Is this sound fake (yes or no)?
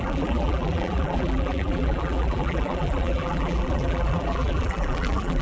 yes